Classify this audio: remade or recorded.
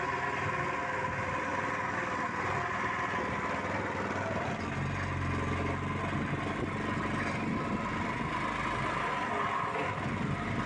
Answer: recorded